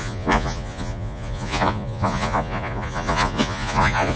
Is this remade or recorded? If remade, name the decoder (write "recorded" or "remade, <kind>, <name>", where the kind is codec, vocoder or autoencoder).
remade, vocoder, Vocos